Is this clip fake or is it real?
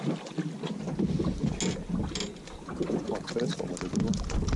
real